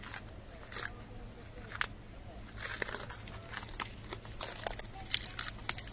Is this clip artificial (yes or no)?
no